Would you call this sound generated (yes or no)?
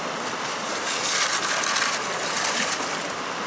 no